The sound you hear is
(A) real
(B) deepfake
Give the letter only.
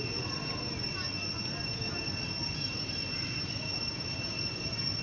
A